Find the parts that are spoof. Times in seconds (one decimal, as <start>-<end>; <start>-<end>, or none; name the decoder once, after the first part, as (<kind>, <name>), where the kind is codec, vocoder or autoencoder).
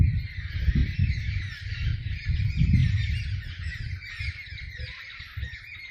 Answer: 0.8-2.4 (vocoder, BigVGAN v2)